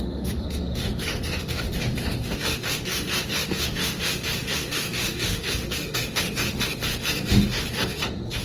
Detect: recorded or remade remade